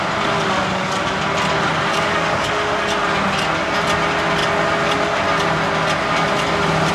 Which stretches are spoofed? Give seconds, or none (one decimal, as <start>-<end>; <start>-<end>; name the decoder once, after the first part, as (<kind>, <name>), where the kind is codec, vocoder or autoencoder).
0.6-1.2 (codec, DAC); 1.9-2.5